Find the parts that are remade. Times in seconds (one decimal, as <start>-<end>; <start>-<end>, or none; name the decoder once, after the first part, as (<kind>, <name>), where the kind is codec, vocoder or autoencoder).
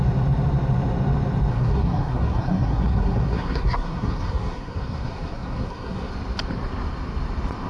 1.5-6.1 (codec, SNAC)